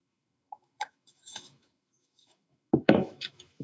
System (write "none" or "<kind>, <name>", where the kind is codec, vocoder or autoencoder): autoencoder, DAC-VAE